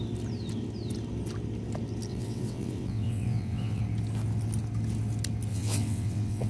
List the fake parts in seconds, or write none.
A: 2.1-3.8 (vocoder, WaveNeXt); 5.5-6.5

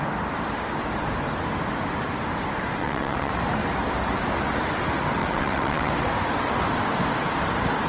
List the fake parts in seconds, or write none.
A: 2.8-3.3 (vocoder, WaveNeXt); 5.2-5.9

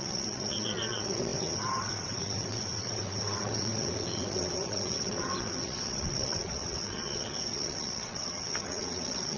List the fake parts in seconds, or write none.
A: 0.0-9.4 (vocoder, WaveNeXt)

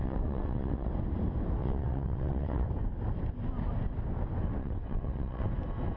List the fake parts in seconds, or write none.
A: 0.0-0.9 (vocoder, WaveNeXt); 1.6-2.7; 4.6-5.5

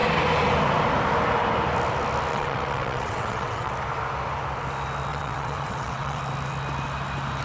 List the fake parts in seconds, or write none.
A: 2.3-3.7 (vocoder, WaveNeXt); 5.1-6.2

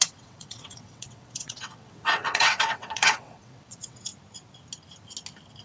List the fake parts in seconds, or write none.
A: 0.0-4.1 (vocoder, WaveNeXt)

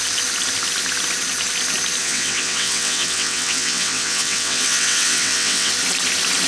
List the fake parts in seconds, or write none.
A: 2.0-5.7 (vocoder, WaveNeXt)

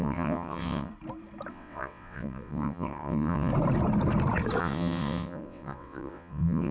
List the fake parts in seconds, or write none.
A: 0.0-0.9 (vocoder, WaveNeXt); 1.5-3.5; 4.6-6.7